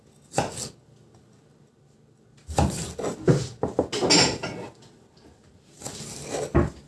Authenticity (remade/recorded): recorded